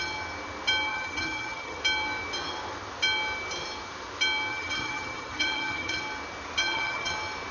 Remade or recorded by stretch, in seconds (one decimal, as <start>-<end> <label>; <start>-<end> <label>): 0.0-0.9 recorded; 0.9-1.8 remade; 1.8-4.5 recorded; 4.5-6.0 remade; 6.0-6.6 recorded; 6.6-7.1 remade; 7.1-7.5 recorded

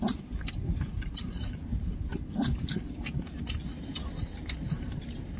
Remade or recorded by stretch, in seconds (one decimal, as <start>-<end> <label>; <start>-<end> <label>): 0.0-5.4 recorded

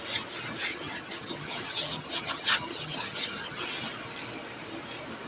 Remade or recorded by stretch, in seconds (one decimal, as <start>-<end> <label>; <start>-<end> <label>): 0.0-0.7 recorded; 0.7-3.6 remade; 3.6-5.3 recorded

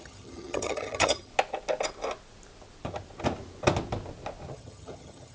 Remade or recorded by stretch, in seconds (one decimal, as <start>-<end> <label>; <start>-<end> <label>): 0.0-1.3 remade; 1.3-4.5 recorded; 4.5-5.3 remade

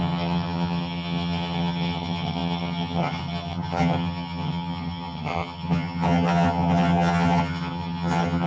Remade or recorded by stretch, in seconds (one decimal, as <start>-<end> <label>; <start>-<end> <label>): 0.0-8.5 remade

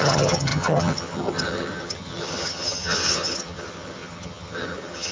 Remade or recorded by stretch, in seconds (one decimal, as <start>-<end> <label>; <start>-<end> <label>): 0.0-5.1 remade